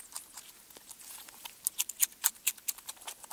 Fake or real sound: real